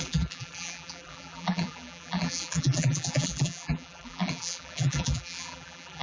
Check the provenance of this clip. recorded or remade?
remade